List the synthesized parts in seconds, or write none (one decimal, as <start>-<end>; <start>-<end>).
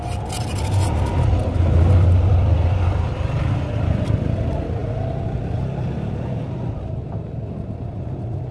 none